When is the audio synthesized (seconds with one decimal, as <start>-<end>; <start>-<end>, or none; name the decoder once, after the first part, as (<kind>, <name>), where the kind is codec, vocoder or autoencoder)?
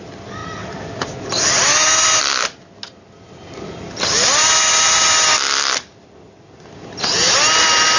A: none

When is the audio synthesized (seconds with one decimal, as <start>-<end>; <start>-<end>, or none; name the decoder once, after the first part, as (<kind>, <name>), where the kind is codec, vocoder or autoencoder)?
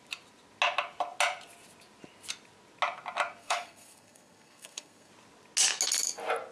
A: 3.4-5.1 (codec, SNAC)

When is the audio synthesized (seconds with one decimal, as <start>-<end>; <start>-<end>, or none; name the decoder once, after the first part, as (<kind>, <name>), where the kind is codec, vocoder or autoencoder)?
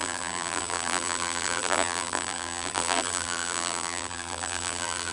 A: 0.0-5.1 (vocoder, BigVGAN v2)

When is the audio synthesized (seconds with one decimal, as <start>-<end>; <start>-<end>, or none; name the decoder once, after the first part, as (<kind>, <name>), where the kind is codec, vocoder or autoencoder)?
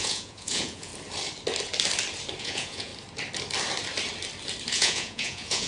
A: 0.0-0.9 (vocoder, Vocos); 2.4-2.9; 4.7-5.7